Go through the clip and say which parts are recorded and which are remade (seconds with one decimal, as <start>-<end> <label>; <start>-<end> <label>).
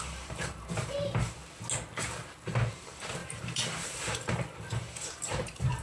0.0-1.4 remade; 1.4-2.7 recorded; 2.7-5.8 remade